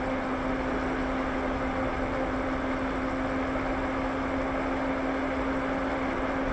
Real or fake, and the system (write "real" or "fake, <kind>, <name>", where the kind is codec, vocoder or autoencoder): real